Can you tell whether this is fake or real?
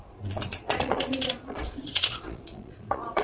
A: fake